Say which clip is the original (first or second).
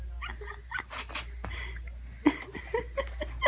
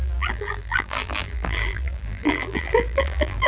first